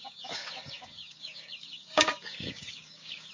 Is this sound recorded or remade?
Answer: remade